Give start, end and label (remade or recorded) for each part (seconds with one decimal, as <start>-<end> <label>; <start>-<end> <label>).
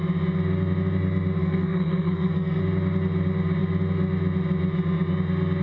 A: 0.0-1.4 recorded; 1.4-2.6 remade; 2.6-5.6 recorded